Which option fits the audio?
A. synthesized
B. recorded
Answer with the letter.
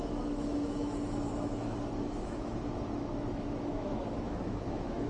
A